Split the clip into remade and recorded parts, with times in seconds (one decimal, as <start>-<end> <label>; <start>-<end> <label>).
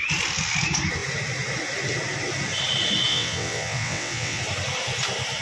0.0-3.1 recorded; 3.1-4.4 remade; 4.4-5.4 recorded